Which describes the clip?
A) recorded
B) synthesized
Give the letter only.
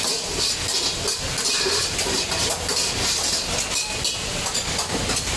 A